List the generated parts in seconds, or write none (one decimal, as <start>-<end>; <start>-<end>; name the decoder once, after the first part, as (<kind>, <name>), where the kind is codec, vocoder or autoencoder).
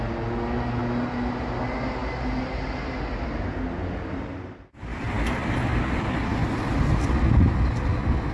none